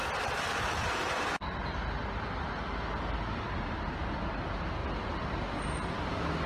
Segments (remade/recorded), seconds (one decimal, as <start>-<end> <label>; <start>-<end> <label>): 0.0-4.8 recorded; 4.8-5.4 remade; 5.4-6.5 recorded